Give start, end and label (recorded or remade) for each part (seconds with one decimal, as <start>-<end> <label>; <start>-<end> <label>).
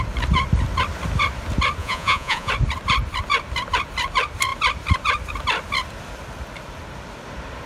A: 0.0-1.8 recorded; 1.8-2.5 remade; 2.5-7.7 recorded